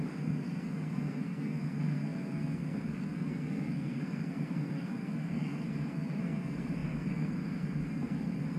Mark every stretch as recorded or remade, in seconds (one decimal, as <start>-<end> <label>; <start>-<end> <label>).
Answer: 0.0-8.6 remade